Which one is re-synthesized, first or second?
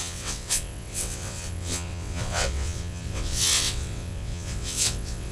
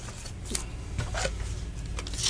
first